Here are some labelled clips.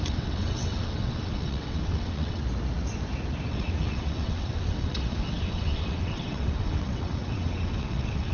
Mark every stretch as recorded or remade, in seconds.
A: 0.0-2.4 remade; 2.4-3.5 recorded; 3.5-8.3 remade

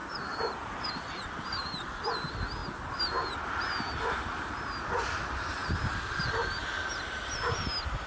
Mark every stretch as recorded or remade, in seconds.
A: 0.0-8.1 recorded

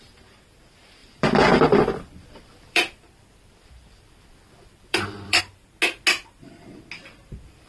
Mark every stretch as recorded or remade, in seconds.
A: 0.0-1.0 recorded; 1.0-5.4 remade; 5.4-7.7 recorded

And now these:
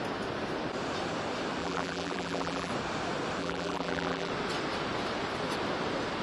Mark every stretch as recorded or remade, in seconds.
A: 0.0-1.6 recorded; 1.6-2.7 remade; 2.7-3.4 recorded; 3.4-4.3 remade; 4.3-6.2 recorded